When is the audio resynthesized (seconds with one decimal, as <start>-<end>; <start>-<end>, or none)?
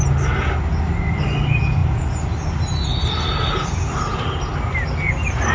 none